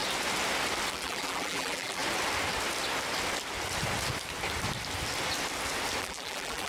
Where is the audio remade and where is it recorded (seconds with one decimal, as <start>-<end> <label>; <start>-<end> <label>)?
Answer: 0.0-0.9 recorded; 0.9-2.0 remade; 2.0-6.0 recorded; 6.0-6.7 remade